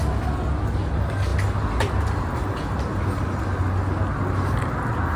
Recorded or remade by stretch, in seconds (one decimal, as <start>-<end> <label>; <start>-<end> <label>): 0.0-5.2 recorded